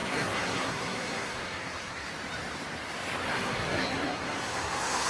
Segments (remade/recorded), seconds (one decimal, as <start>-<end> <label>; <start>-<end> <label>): 0.0-2.1 remade; 2.1-3.3 recorded; 3.3-5.1 remade